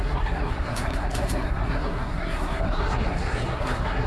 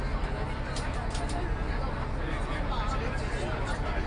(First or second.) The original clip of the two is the second